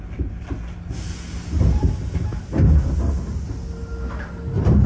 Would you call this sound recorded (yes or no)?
yes